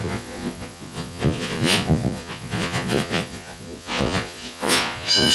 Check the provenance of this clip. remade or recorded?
remade